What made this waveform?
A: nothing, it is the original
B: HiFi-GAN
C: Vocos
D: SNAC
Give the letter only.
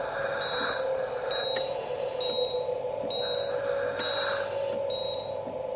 A